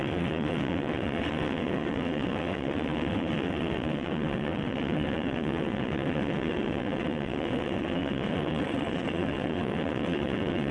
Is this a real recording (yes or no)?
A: no